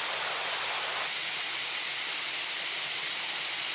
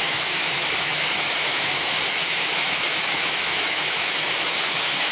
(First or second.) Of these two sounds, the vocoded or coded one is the second